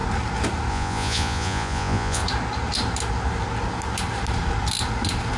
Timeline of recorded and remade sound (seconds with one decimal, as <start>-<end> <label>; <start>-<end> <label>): 0.0-0.7 recorded; 0.7-2.2 remade; 2.2-5.4 recorded

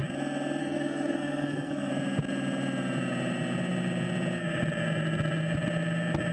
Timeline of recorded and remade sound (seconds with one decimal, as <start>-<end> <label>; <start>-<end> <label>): 0.0-0.6 recorded; 0.6-1.9 remade; 1.9-6.3 recorded

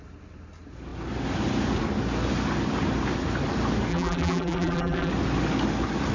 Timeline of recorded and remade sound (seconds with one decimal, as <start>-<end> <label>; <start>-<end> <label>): 0.0-3.9 recorded; 3.9-5.1 remade; 5.1-6.1 recorded

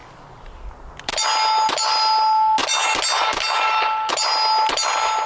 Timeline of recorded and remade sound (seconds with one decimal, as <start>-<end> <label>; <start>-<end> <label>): 0.0-5.3 recorded

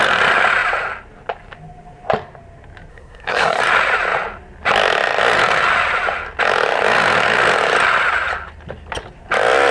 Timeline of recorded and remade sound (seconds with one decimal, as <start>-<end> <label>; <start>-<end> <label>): 0.0-2.9 recorded; 2.9-3.6 remade; 3.6-9.7 recorded

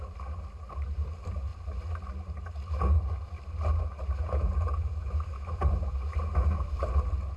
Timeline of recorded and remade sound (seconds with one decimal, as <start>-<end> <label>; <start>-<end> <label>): 0.0-4.2 recorded; 4.2-5.1 remade; 5.1-7.4 recorded